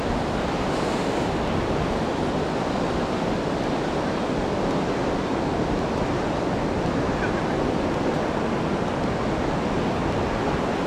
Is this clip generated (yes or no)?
no